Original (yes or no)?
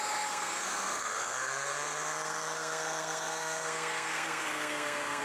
no